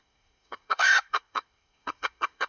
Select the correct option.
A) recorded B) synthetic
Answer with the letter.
B